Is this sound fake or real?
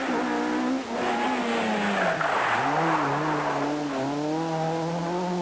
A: real